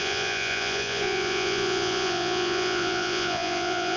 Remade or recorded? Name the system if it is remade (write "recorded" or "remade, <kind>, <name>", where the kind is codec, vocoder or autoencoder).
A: remade, vocoder, Vocos